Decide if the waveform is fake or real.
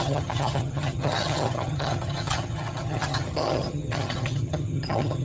fake